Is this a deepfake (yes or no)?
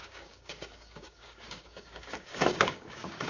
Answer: yes